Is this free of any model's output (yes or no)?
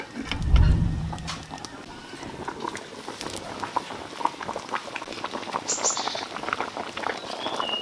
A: yes